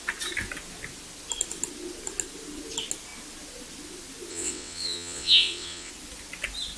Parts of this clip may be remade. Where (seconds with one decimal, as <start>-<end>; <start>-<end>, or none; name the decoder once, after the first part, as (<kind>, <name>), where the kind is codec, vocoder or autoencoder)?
4.3-5.9 (vocoder, WaveNeXt)